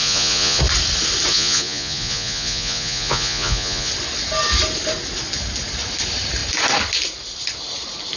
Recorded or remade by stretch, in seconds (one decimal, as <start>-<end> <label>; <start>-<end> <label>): 0.0-0.6 remade; 0.6-1.3 recorded; 1.3-3.9 remade; 3.9-8.2 recorded

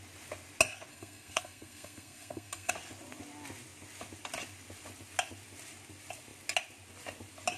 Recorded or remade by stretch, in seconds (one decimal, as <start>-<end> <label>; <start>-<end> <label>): 0.0-0.9 recorded; 0.9-2.7 remade; 2.7-7.6 recorded

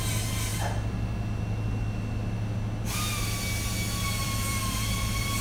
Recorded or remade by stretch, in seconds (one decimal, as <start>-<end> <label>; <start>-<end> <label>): 0.0-4.2 recorded; 4.2-5.4 remade

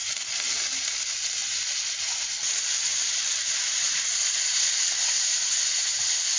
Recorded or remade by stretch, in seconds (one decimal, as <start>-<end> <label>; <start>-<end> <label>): 0.0-6.4 recorded

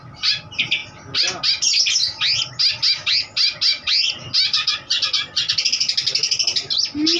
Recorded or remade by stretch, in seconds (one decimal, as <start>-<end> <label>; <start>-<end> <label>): 0.0-7.2 recorded

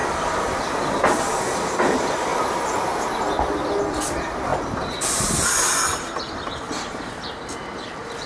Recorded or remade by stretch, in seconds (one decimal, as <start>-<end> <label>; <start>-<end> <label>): 0.0-8.3 recorded